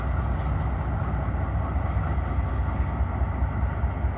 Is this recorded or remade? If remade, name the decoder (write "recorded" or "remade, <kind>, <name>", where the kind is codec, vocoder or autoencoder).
recorded